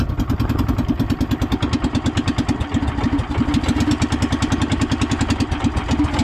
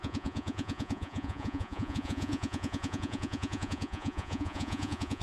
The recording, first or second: first